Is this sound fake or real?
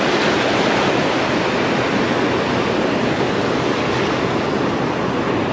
real